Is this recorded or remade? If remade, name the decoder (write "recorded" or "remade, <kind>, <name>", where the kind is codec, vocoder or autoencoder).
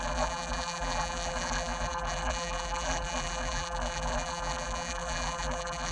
remade, vocoder, BigVGAN v2